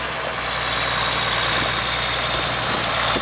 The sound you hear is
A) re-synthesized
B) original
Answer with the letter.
B